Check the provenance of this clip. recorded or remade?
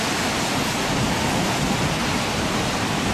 recorded